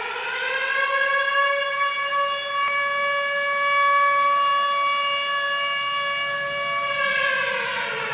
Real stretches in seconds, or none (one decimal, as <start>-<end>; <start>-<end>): 0.0-8.1